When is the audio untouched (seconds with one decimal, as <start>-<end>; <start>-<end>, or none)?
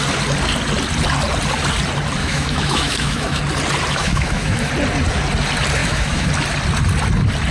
0.0-2.2; 3.4-4.0; 4.7-5.8; 6.3-7.5